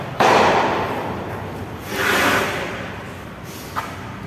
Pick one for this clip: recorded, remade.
recorded